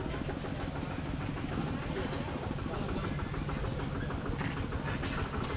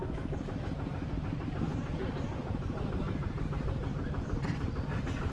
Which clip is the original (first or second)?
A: first